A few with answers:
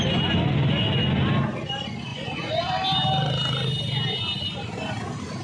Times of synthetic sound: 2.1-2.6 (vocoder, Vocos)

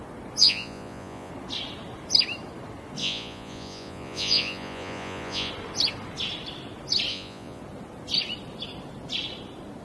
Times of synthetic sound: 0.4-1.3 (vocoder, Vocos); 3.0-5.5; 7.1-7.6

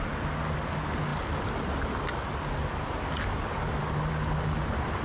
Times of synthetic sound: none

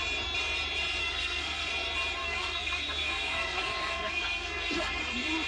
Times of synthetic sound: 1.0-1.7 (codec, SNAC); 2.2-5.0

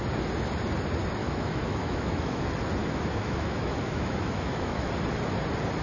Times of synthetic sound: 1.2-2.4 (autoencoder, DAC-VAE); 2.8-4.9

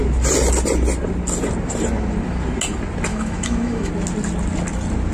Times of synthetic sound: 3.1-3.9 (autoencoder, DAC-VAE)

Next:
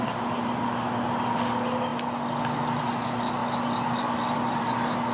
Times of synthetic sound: none

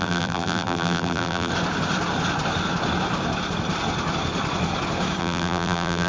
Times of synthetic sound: 0.0-1.5 (vocoder, BigVGAN v2); 5.2-6.1